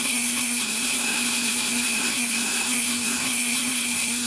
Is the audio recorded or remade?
remade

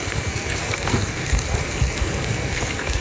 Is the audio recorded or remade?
remade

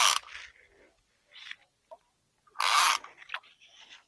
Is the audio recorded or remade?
recorded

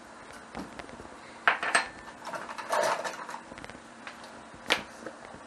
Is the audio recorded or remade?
recorded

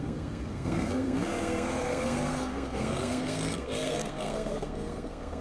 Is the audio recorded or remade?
remade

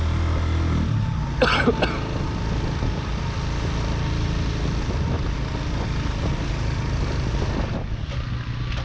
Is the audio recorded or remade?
recorded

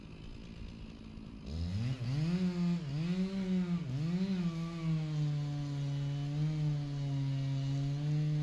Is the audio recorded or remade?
recorded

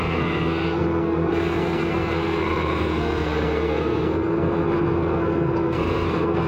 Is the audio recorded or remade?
remade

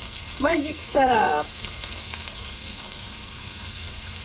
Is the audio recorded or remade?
remade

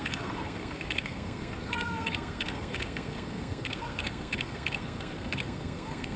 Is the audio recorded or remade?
remade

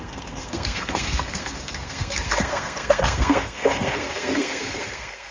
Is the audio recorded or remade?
remade